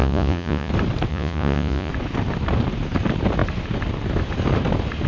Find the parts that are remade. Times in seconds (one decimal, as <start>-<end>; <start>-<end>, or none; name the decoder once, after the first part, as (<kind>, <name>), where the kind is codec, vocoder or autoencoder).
0.0-0.7 (vocoder, Vocos); 1.1-1.9